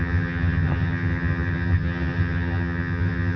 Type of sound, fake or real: fake